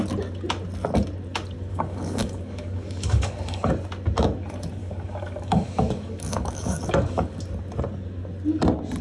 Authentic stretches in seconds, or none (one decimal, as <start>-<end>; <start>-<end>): 0.0-1.7; 3.7-4.8; 7.4-9.0